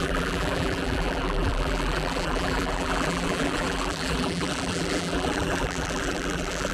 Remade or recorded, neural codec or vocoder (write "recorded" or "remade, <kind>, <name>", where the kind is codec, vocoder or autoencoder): remade, vocoder, BigVGAN v2